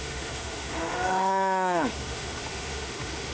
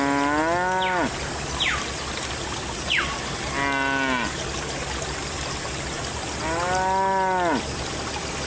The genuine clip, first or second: second